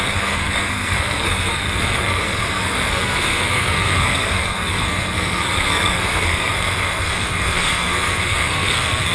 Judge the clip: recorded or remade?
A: remade